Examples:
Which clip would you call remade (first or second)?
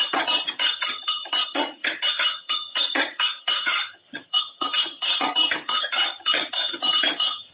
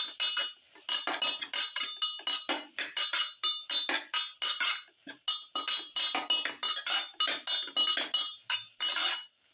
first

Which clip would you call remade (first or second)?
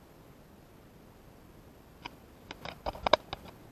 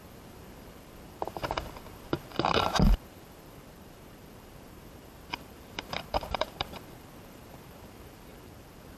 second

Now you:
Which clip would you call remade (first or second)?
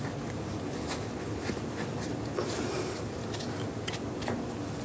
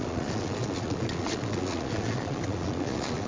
second